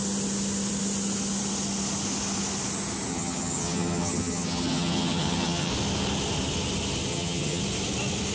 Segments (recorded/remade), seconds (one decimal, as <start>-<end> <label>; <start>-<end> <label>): 0.0-3.1 recorded; 3.1-5.7 remade; 5.7-7.1 recorded; 7.1-7.6 remade; 7.6-8.3 recorded